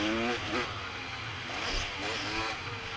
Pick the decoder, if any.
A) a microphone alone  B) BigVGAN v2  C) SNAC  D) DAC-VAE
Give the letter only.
A